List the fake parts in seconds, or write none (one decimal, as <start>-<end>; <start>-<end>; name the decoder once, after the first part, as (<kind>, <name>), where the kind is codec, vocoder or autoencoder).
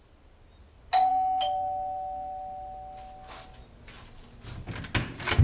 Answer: none